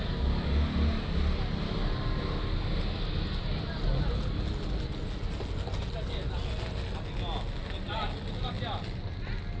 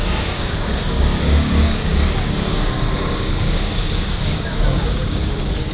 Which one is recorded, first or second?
first